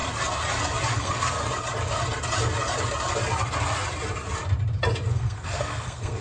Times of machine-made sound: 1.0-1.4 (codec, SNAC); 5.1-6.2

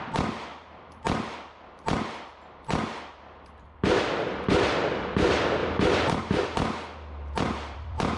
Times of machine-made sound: 0.0-5.6 (vocoder, BigVGAN v2); 6.2-8.2

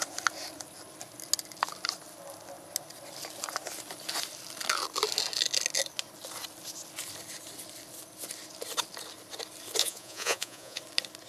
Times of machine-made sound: 9.8-10.8 (vocoder, Vocos)

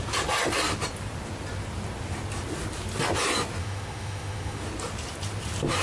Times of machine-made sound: 3.6-4.6 (autoencoder, DAC-VAE)

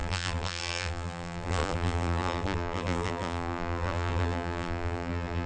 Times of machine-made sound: 0.0-5.5 (vocoder, BigVGAN v2)

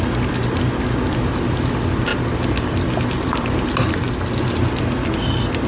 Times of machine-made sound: none

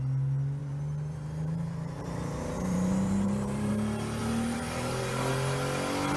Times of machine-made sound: 0.6-3.7 (vocoder, BigVGAN v2); 4.2-5.3